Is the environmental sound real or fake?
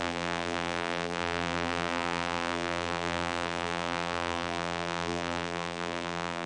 fake